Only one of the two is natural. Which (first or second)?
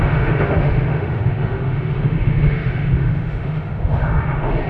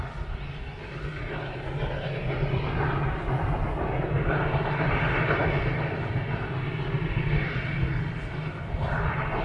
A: second